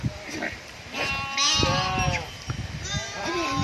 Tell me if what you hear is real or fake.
real